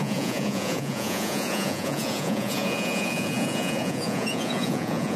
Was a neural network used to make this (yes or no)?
yes